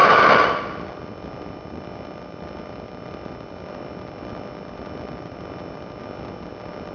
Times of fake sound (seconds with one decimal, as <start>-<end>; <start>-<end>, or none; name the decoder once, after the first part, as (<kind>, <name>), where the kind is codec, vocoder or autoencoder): none